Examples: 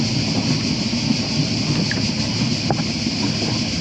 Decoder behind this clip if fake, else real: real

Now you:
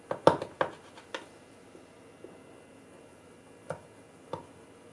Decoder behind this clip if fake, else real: real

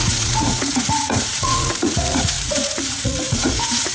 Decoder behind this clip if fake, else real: fake, vocoder, Vocos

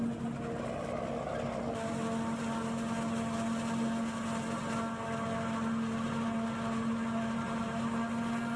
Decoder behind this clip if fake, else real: real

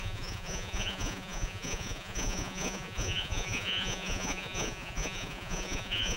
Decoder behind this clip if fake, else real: fake, vocoder, Vocos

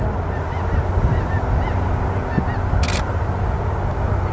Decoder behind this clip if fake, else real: real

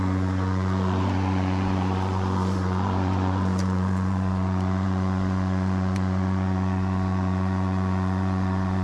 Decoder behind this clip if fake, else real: fake, vocoder, Vocos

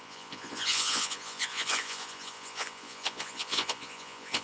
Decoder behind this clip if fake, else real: fake, vocoder, Vocos